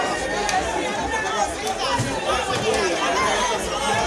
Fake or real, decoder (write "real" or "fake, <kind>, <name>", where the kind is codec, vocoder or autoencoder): real